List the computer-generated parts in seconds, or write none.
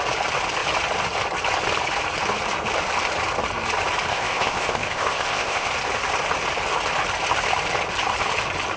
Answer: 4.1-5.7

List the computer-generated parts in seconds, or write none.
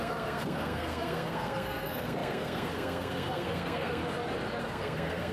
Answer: 0.0-4.0; 4.6-5.3